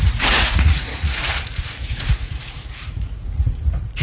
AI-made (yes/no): yes